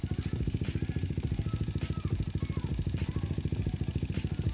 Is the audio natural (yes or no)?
yes